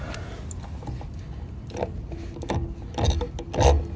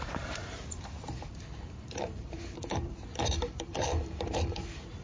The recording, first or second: first